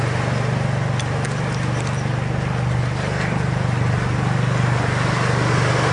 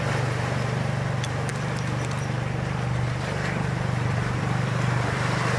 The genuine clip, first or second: first